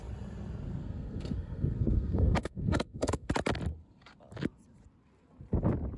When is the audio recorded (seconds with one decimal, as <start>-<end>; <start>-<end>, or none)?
0.0-0.8; 3.3-6.0